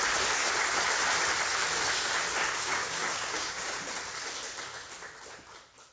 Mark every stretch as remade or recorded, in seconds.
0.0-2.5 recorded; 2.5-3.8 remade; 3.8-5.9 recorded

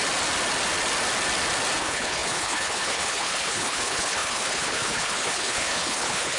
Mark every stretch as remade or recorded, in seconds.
0.0-1.8 recorded; 1.8-6.4 remade

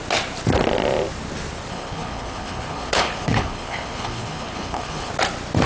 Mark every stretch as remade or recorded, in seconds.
0.0-1.7 recorded; 1.7-5.1 remade; 5.1-5.7 recorded

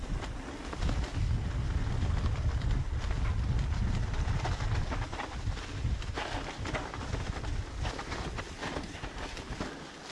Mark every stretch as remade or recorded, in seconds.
0.0-10.1 recorded